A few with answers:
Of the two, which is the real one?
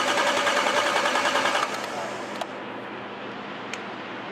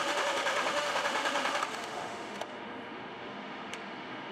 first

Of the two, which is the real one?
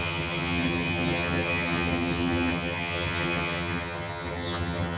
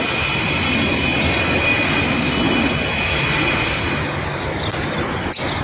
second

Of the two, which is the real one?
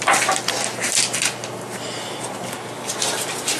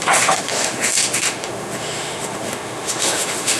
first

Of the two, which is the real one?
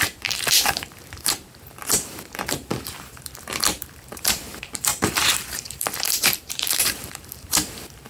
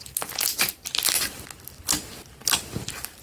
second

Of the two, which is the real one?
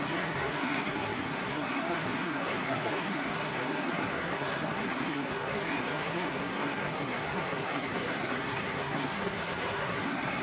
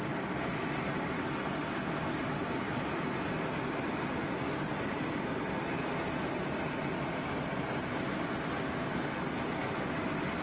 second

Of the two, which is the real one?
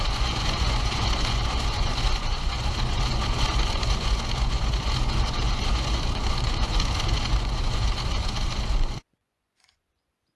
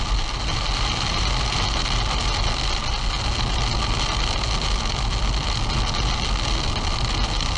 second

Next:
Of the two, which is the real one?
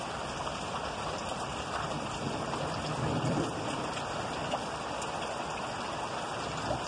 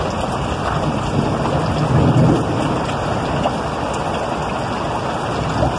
second